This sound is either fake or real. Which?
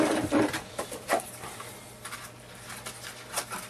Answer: real